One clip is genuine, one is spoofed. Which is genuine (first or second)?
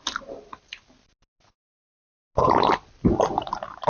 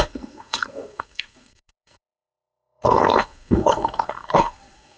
first